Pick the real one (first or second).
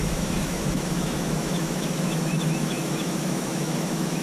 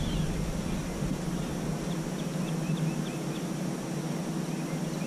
second